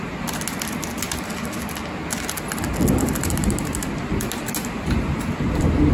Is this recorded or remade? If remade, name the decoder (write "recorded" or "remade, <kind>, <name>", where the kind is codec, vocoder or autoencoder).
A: recorded